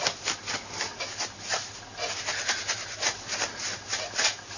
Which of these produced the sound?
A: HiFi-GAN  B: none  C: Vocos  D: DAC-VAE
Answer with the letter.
B